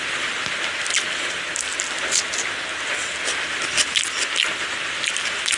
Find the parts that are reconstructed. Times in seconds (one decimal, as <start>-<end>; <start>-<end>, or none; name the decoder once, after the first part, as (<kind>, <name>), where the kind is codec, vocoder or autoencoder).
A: none